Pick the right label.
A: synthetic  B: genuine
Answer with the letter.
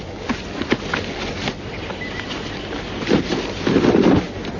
B